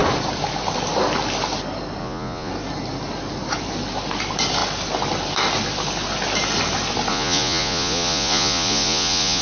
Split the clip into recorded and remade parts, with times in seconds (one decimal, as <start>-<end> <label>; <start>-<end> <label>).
0.0-2.0 recorded; 2.0-2.5 remade; 2.5-7.1 recorded; 7.1-9.4 remade